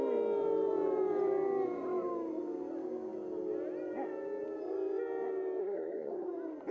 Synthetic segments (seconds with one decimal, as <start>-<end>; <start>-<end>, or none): 5.6-6.3